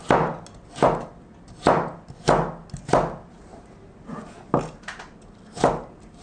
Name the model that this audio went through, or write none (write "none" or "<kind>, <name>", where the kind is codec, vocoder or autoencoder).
none